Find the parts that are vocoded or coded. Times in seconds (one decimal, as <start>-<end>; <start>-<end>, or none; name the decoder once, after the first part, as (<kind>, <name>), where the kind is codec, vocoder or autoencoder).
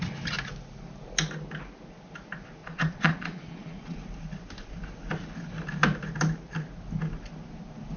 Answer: 2.6-4.0 (vocoder, Vocos)